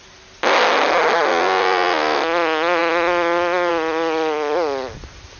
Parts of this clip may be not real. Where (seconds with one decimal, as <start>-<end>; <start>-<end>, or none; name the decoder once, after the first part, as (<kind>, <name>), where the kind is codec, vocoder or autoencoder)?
none